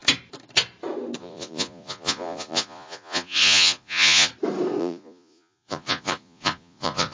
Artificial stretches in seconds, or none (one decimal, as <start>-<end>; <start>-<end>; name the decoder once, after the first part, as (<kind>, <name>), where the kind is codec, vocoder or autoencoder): 1.2-4.3 (vocoder, Vocos); 4.8-7.1